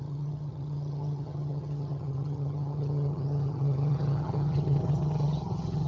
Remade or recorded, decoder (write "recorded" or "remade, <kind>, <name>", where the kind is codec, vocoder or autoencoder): remade, vocoder, HiFi-GAN